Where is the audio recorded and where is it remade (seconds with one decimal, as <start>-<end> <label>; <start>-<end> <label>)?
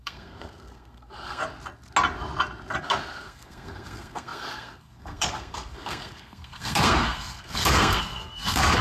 0.0-1.4 remade; 1.4-2.8 recorded; 2.8-8.8 remade